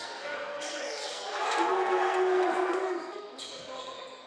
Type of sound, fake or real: fake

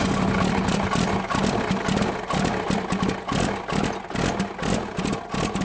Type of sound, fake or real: real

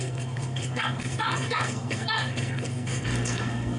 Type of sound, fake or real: fake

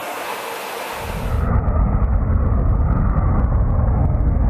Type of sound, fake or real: real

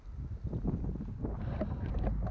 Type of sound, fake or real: real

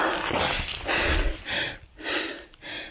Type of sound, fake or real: real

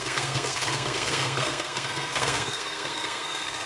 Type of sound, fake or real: fake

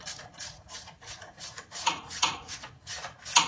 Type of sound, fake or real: fake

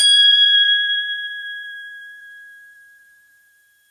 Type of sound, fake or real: fake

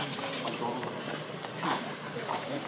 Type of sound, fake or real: fake